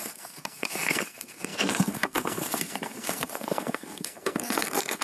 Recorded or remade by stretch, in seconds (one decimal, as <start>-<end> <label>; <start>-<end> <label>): 0.0-5.0 remade